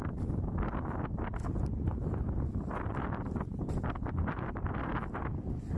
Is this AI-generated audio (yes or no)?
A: no